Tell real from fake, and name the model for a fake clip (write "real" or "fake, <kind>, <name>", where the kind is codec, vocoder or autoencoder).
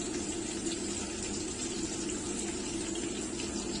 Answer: real